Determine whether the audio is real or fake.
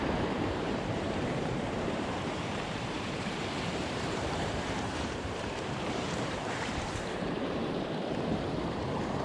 fake